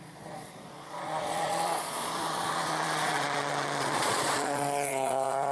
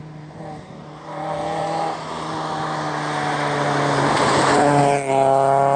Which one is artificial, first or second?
first